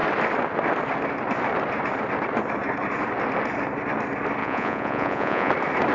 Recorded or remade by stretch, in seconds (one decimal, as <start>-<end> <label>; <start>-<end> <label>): 0.0-4.4 recorded; 4.4-5.5 remade; 5.5-5.9 recorded